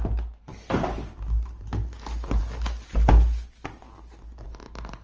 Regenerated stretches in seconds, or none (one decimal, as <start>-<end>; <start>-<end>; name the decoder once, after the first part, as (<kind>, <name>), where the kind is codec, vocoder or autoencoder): none